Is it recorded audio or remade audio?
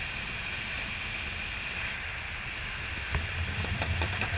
remade